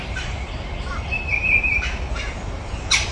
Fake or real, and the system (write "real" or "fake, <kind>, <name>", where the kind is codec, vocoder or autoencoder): fake, vocoder, BigVGAN v2